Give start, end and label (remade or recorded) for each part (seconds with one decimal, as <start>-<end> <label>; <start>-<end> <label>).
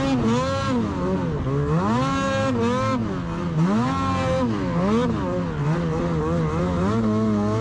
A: 0.0-7.6 recorded